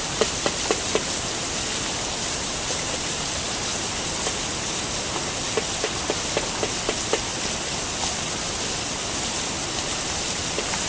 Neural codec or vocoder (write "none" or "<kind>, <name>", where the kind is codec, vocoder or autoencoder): none